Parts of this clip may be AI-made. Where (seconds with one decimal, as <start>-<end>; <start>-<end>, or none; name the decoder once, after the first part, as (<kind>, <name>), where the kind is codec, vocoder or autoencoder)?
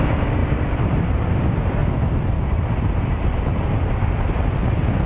0.0-1.8 (vocoder, BigVGAN v2); 2.8-3.5